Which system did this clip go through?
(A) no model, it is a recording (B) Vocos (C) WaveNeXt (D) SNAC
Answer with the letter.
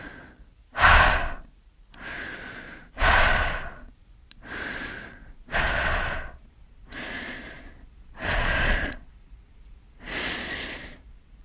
B